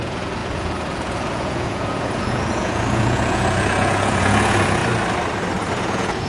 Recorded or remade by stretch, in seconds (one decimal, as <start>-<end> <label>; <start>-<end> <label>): 0.0-4.8 remade; 4.8-5.8 recorded; 5.8-6.3 remade